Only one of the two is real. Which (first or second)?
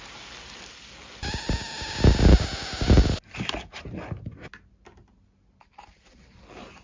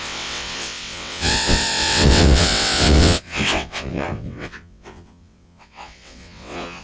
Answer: first